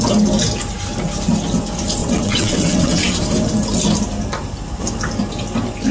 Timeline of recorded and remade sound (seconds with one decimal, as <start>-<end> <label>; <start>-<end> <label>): 0.0-2.0 recorded; 2.0-3.2 remade; 3.2-5.9 recorded